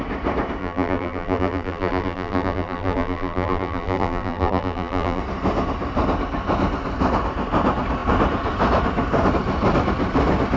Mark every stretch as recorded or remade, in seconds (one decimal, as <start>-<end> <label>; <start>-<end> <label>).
0.0-0.6 recorded; 0.6-5.2 remade; 5.2-10.6 recorded